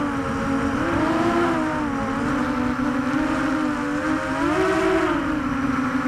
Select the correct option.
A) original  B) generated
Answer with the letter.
A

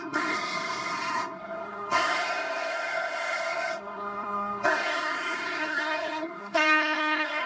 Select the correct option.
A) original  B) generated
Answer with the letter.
B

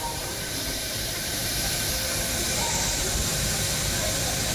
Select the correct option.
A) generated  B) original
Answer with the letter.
A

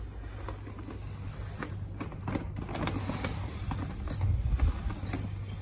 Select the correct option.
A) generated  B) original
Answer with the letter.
B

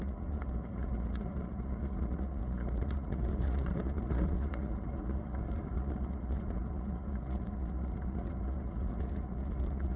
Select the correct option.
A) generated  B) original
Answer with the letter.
A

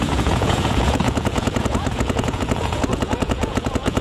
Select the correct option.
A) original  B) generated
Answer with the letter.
B